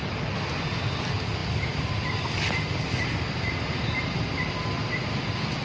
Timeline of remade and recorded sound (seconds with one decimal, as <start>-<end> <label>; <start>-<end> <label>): 0.0-5.6 recorded

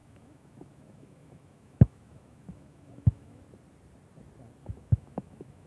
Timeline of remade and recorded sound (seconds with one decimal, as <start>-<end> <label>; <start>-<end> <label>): 0.0-3.4 remade; 3.4-4.6 recorded; 4.6-5.7 remade

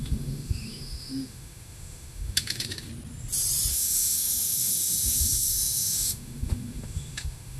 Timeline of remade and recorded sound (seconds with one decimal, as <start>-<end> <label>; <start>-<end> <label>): 0.0-2.9 remade; 2.9-3.7 recorded; 3.7-7.6 remade

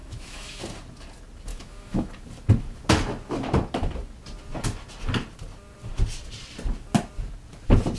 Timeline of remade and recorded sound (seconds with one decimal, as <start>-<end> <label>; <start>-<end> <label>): 0.0-0.6 remade; 0.6-1.5 recorded; 1.5-2.1 remade; 2.1-8.0 recorded

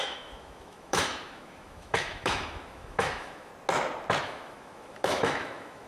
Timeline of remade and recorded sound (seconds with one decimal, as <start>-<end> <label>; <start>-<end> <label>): 0.0-3.5 remade; 3.5-4.2 recorded; 4.2-5.9 remade

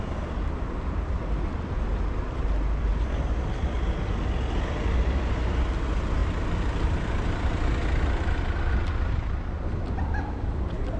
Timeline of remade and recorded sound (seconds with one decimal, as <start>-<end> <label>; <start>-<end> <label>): 0.0-11.0 recorded